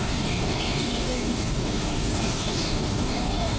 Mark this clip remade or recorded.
remade